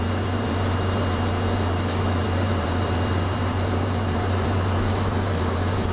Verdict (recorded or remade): remade